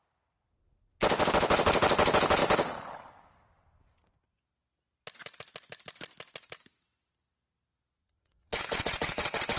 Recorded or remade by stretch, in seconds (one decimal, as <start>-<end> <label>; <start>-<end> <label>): 0.0-8.0 recorded; 8.0-9.6 remade